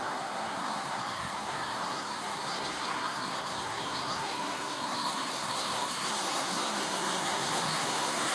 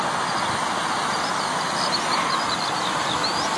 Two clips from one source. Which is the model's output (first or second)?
first